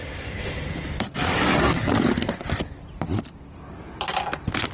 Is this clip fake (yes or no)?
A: no